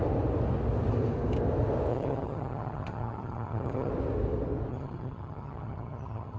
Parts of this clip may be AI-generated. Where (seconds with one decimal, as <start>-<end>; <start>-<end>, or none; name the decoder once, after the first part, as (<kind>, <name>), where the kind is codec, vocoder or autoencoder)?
1.9-3.9 (vocoder, HiFi-GAN); 4.7-6.4